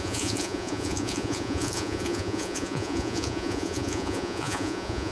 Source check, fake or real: fake